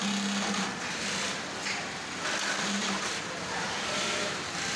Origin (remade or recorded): recorded